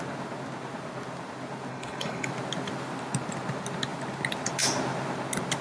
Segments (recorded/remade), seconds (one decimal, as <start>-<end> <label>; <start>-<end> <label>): 0.0-1.7 recorded; 1.7-2.3 remade; 2.3-5.6 recorded